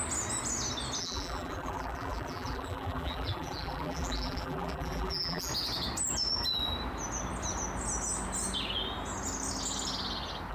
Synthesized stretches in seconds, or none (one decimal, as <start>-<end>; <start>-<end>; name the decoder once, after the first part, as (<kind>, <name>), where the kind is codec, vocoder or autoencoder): 1.0-5.5 (vocoder, BigVGAN v2)